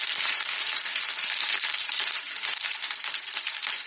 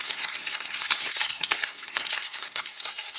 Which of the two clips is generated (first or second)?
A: second